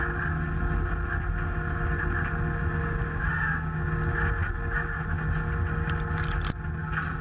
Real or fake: real